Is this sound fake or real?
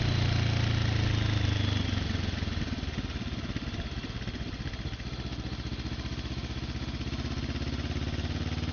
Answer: real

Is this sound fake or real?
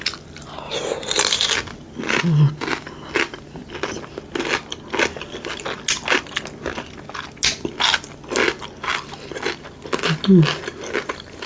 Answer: real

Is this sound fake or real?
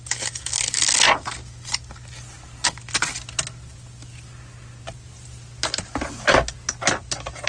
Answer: real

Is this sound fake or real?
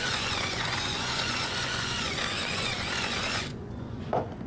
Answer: fake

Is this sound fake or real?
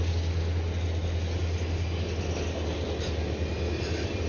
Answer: real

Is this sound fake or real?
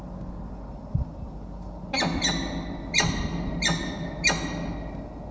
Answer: real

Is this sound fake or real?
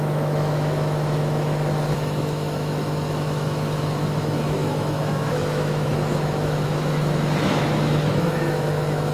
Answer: fake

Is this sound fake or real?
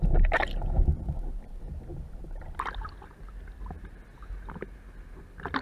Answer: real